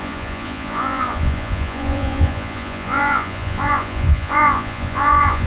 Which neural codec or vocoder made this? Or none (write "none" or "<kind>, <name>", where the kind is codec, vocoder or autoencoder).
vocoder, Vocos